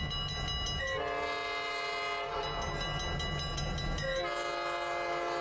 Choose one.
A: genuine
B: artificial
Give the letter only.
A